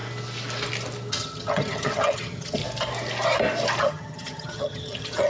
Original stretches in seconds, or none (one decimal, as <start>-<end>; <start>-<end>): 0.0-1.1; 2.6-3.8